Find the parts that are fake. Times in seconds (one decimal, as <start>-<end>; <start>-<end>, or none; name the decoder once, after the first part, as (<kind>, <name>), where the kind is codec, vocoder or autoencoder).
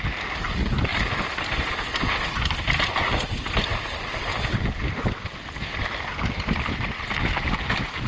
0.9-1.7 (vocoder, BigVGAN v2); 4.3-7.6